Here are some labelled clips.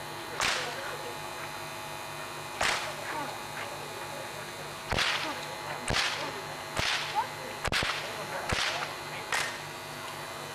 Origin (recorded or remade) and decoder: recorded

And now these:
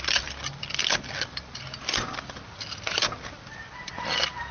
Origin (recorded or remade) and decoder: recorded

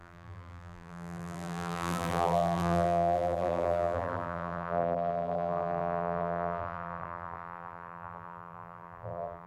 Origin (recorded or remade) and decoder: remade, vocoder, BigVGAN v2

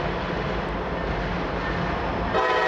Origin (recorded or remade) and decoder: recorded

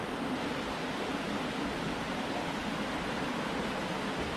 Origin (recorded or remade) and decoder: recorded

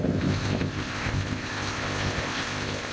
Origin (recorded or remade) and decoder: remade, codec, ZipCodec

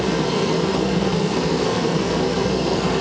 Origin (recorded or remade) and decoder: remade, codec, SNAC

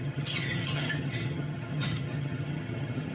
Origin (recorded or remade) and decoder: remade, vocoder, HiFi-GAN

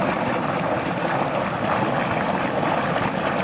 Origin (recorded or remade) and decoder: recorded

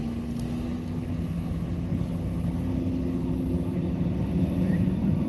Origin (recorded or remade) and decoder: recorded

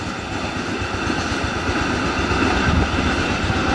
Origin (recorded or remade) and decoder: recorded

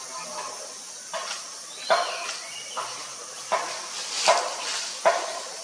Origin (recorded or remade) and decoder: recorded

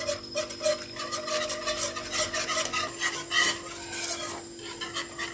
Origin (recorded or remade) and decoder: recorded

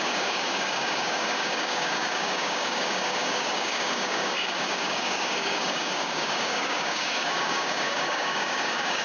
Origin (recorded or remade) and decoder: remade, codec, DAC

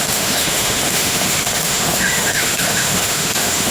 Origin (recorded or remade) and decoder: remade, autoencoder, DAC-VAE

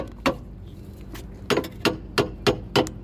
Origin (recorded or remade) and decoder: recorded